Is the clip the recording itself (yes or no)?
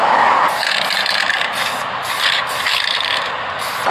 yes